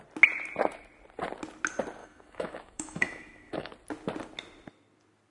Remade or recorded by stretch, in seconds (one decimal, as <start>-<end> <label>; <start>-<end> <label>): 0.0-2.0 recorded; 2.0-3.7 remade; 3.7-5.3 recorded